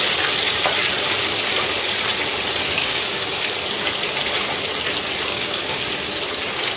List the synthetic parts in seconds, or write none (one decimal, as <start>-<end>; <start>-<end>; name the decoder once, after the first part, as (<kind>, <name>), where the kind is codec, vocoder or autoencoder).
2.8-3.4 (codec, DAC); 5.3-5.9